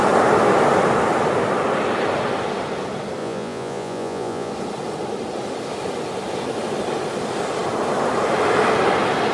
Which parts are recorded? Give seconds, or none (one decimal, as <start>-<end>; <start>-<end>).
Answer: 0.0-3.2; 4.5-9.3

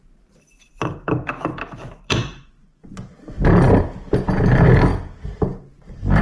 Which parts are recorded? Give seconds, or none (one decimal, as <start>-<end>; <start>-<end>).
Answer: 0.0-2.2; 2.8-6.2